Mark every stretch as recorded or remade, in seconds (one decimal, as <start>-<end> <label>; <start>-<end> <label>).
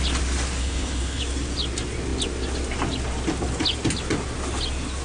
0.0-0.6 recorded; 0.6-1.2 remade; 1.2-5.0 recorded